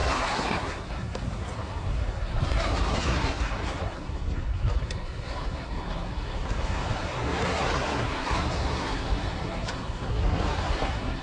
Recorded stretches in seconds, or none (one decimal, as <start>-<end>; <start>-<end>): none